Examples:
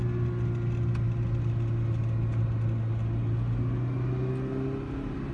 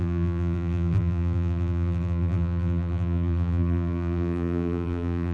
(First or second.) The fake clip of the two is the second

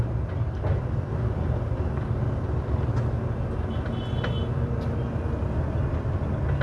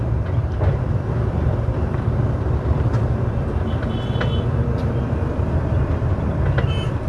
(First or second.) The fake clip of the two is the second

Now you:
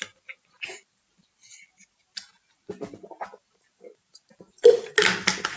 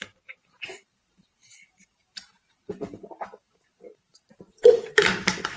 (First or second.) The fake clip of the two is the second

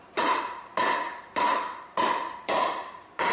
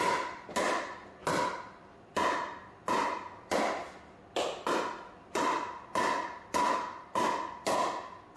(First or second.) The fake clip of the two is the first